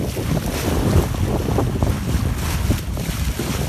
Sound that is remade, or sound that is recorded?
recorded